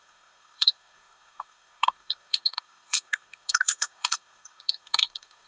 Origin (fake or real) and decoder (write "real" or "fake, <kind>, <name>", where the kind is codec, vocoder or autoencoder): fake, codec, SNAC